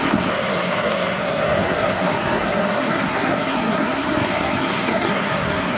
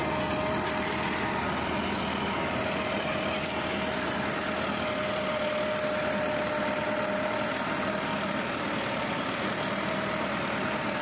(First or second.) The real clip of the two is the second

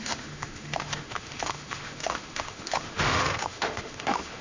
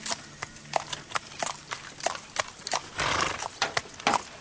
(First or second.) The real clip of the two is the second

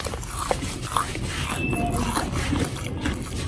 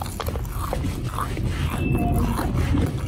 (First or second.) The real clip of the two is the second